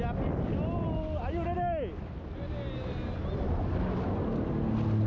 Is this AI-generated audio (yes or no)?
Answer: no